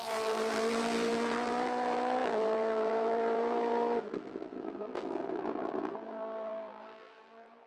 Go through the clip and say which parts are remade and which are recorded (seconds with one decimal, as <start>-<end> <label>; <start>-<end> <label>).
0.0-7.7 remade